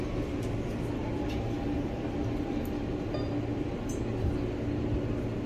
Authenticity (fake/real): real